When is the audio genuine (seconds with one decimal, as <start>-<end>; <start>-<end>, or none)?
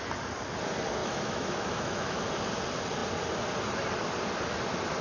0.0-1.0; 2.2-5.0